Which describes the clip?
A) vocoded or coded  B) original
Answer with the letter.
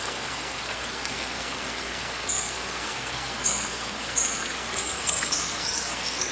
A